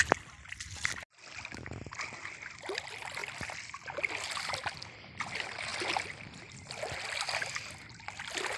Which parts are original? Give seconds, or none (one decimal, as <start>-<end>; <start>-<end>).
0.0-8.6